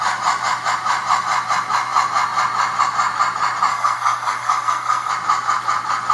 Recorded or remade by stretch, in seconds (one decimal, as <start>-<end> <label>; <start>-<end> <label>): 0.0-3.7 recorded; 3.7-5.1 remade; 5.1-6.1 recorded